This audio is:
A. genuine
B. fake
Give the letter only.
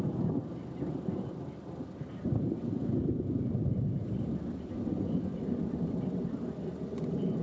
A